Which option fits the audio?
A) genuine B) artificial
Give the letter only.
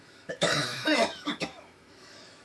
B